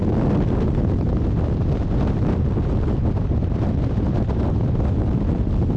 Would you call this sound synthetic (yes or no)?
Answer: no